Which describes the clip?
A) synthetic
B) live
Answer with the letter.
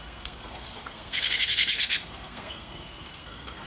A